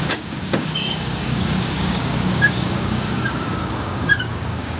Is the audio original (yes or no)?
no